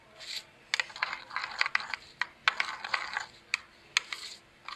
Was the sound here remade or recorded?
recorded